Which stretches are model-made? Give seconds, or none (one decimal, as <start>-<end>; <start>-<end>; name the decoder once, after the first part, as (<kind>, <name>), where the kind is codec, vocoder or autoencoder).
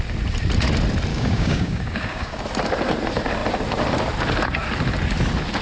1.1-2.4 (codec, DAC)